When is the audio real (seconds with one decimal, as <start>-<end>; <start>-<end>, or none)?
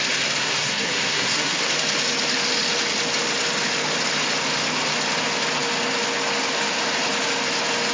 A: 0.0-0.4; 1.7-7.9